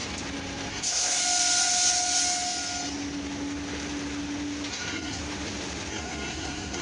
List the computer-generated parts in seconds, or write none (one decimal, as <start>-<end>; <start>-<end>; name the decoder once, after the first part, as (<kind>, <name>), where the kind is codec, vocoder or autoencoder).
0.7-1.2 (codec, SNAC); 4.7-5.2; 5.9-6.8